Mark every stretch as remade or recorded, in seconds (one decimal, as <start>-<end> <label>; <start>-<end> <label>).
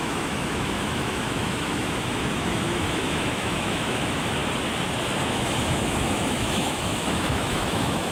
0.0-4.4 remade; 4.4-5.2 recorded; 5.2-8.1 remade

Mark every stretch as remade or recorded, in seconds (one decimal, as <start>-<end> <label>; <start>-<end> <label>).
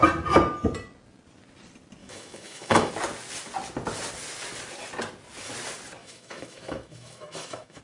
0.0-2.0 recorded; 2.0-2.9 remade; 2.9-6.0 recorded; 6.0-7.8 remade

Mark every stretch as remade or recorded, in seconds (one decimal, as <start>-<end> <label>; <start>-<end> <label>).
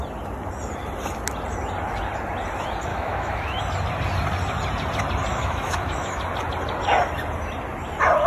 0.0-2.9 recorded; 2.9-3.6 remade; 3.6-5.3 recorded; 5.3-6.2 remade; 6.2-8.3 recorded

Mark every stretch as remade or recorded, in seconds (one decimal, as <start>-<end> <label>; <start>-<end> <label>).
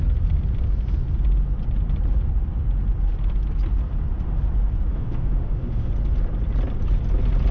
0.0-4.9 recorded; 4.9-5.9 remade; 5.9-7.5 recorded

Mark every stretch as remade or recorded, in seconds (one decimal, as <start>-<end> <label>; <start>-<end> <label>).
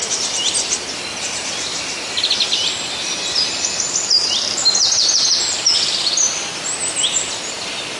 0.0-8.0 recorded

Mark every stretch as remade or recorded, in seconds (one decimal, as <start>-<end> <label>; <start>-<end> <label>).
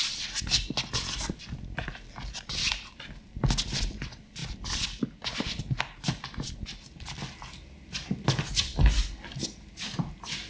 0.0-10.5 recorded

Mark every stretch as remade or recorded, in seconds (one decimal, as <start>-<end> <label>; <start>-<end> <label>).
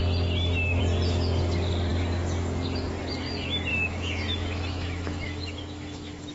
0.0-3.7 recorded; 3.7-6.3 remade